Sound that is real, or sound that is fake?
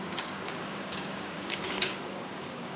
fake